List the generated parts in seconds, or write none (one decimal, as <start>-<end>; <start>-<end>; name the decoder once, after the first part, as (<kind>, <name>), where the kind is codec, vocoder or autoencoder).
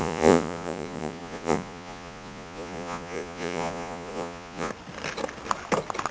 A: 0.0-4.7 (vocoder, Vocos)